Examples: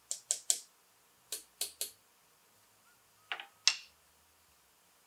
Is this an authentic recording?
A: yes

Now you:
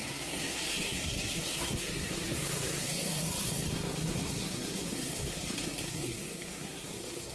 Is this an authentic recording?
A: no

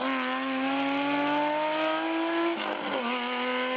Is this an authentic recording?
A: yes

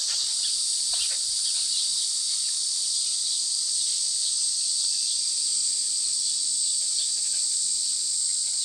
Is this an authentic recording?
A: yes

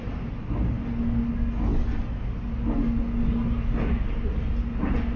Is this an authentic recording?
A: yes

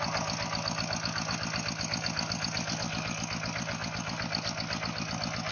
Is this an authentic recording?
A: yes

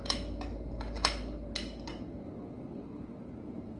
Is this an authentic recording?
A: yes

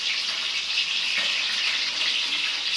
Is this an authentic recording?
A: yes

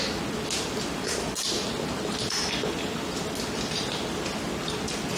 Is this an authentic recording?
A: yes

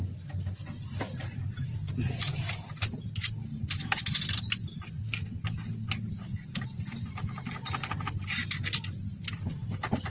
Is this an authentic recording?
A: yes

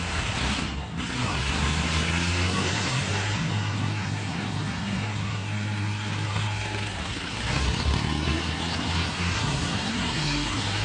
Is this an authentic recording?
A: no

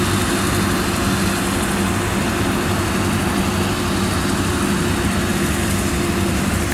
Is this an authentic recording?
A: yes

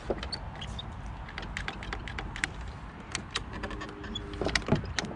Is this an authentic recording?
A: yes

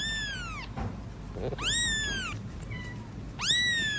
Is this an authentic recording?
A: yes